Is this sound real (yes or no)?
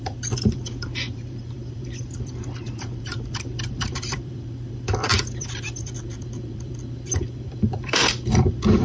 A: no